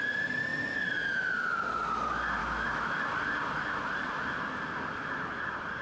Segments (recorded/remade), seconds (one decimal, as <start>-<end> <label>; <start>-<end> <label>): 0.0-2.4 recorded; 2.4-3.0 remade; 3.0-5.8 recorded